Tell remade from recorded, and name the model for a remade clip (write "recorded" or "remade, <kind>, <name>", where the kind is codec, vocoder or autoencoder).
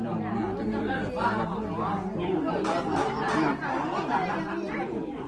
recorded